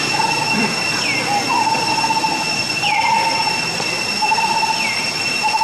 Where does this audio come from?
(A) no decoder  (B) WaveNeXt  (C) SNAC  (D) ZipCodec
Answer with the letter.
A